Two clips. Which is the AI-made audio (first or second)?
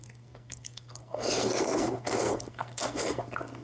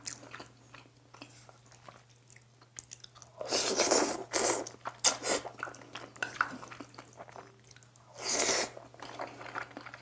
first